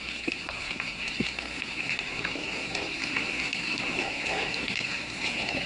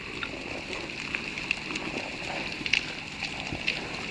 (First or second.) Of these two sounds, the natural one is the second